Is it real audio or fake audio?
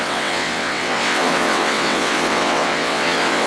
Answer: fake